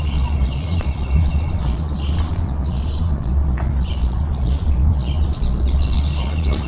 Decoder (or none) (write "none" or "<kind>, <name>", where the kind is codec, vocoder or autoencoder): vocoder, Vocos